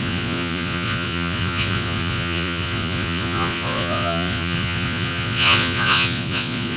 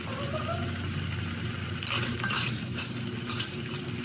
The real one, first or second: second